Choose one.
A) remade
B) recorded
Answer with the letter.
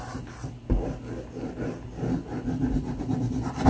B